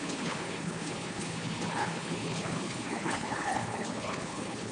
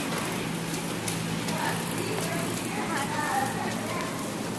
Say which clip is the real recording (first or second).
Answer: second